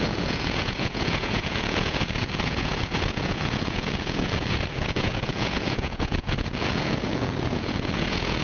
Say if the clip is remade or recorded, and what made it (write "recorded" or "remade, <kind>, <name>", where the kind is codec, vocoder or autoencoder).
remade, vocoder, Vocos